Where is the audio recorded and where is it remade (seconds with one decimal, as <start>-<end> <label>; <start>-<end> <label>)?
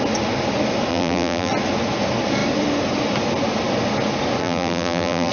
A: 0.0-0.9 recorded; 0.9-1.5 remade; 1.5-4.4 recorded; 4.4-5.3 remade